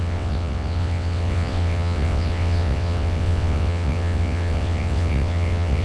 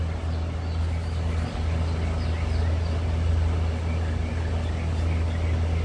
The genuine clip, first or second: second